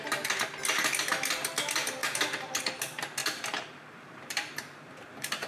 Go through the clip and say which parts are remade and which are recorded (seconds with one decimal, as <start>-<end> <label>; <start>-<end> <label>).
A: 0.0-2.0 recorded; 2.0-2.6 remade; 2.6-3.2 recorded; 3.2-5.5 remade